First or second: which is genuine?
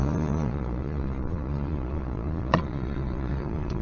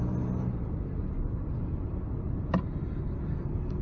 second